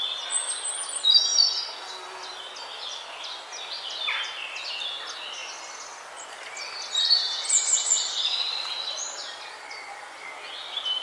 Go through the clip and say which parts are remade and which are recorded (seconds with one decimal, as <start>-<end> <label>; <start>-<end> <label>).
0.0-9.2 recorded; 9.2-10.2 remade; 10.2-11.0 recorded